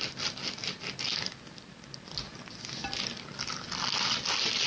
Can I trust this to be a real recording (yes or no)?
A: yes